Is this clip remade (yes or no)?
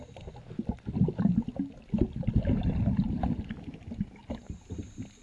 no